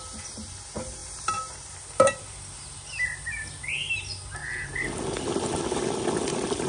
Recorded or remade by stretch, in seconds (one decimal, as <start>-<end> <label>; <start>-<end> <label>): 0.0-6.7 recorded